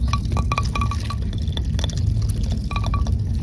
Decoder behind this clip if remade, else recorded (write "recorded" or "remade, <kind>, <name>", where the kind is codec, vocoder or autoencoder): recorded